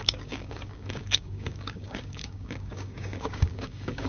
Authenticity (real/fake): fake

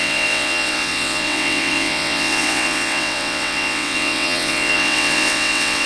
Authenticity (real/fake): fake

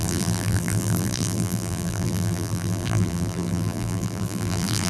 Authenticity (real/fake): fake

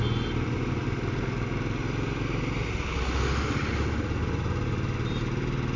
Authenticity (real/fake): real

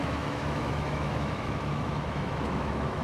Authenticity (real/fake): fake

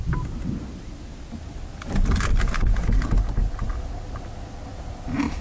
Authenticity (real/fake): real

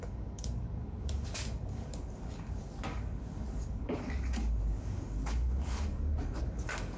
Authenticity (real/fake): fake